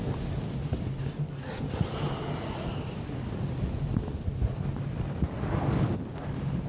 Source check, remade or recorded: recorded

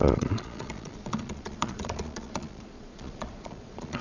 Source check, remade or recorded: remade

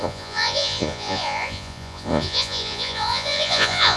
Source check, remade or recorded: remade